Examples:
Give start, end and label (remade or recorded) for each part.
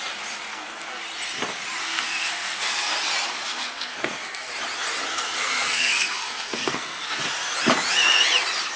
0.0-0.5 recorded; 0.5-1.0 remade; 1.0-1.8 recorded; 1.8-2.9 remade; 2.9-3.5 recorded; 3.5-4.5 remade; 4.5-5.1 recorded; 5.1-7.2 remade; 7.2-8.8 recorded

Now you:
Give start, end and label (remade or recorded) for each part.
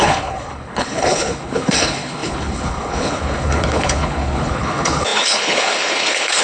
0.0-6.4 remade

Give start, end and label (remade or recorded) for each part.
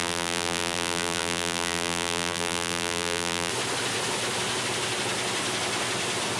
0.0-3.5 remade; 3.5-6.4 recorded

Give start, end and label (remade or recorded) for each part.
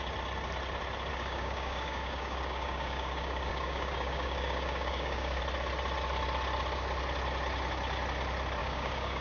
0.0-1.1 recorded; 1.1-5.4 remade; 5.4-8.6 recorded; 8.6-9.2 remade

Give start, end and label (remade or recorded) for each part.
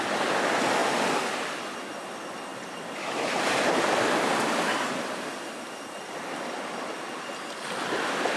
0.0-2.5 recorded; 2.5-5.8 remade; 5.8-8.4 recorded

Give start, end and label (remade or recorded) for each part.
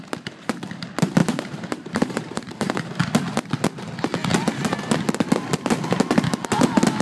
0.0-1.2 recorded; 1.2-3.0 remade; 3.0-7.0 recorded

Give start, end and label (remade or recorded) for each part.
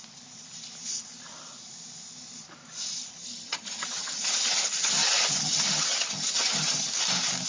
0.0-3.2 recorded; 3.2-6.9 remade; 6.9-7.5 recorded